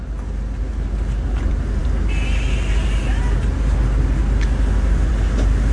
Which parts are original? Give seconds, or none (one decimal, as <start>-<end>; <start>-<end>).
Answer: 0.0-5.7